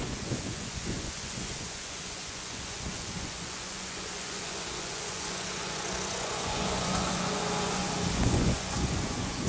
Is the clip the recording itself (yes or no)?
no